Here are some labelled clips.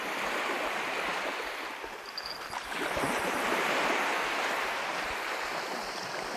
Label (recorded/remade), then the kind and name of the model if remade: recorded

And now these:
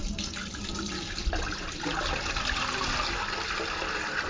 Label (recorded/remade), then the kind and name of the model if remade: recorded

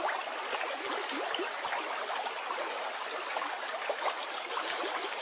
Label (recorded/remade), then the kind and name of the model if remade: recorded